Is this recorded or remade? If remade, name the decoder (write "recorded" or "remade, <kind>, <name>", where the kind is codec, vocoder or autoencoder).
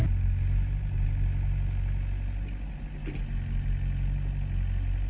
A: recorded